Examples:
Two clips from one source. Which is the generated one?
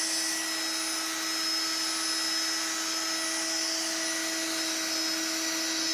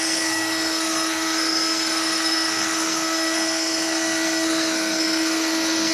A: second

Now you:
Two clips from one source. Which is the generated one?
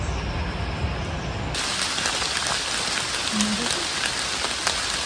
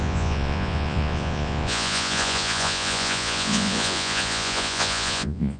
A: second